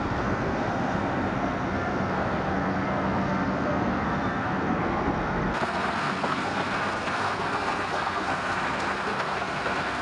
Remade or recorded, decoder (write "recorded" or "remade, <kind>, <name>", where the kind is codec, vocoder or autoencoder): remade, codec, SNAC